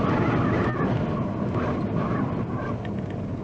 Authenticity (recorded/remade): recorded